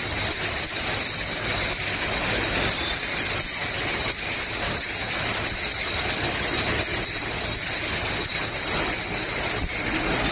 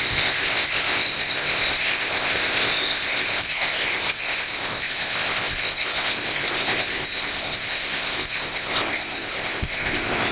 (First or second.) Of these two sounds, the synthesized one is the second